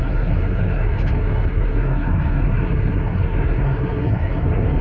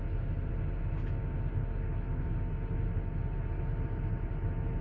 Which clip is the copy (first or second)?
first